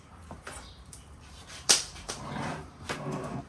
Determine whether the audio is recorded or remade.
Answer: remade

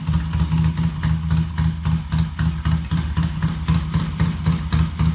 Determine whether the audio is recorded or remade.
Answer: recorded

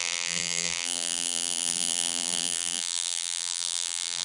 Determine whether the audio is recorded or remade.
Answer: remade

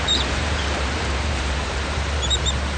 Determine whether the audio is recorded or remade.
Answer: remade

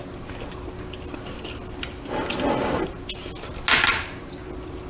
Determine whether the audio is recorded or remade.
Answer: recorded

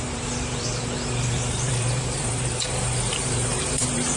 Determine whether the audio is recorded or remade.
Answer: remade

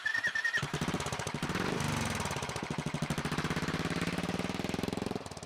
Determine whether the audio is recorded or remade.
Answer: remade